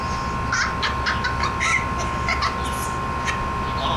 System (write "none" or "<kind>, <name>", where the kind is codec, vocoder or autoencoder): none